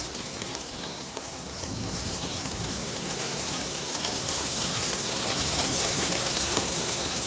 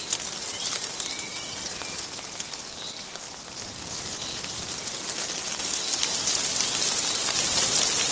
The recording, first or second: second